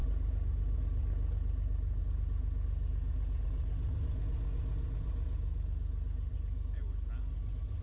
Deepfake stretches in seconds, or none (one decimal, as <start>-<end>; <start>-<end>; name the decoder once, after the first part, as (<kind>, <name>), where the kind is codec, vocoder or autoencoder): none